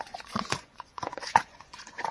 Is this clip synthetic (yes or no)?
yes